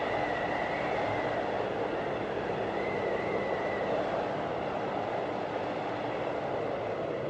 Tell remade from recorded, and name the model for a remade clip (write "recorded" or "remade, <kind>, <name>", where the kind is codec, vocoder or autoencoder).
recorded